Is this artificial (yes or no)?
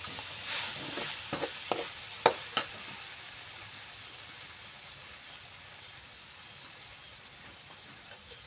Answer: no